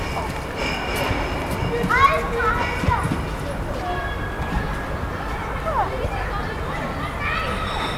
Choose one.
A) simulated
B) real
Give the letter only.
B